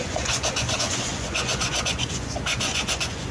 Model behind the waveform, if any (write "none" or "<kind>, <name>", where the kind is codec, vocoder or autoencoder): vocoder, Vocos